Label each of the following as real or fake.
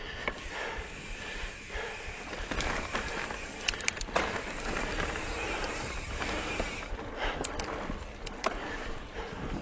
fake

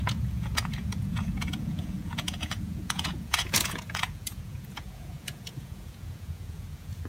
fake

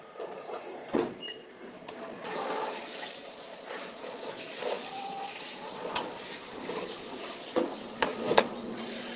fake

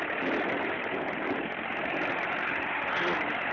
real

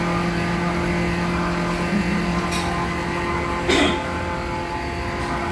real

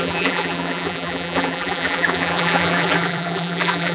fake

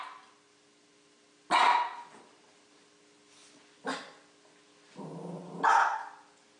real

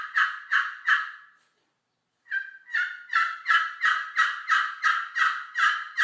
real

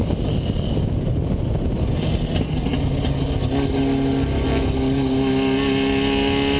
real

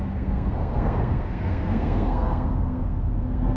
fake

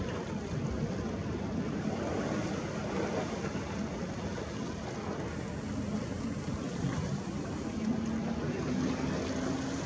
real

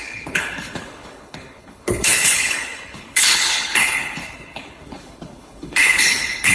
fake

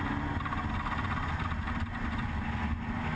real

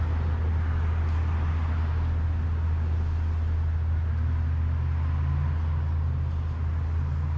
real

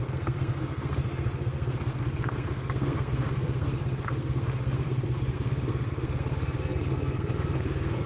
fake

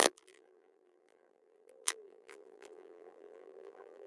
fake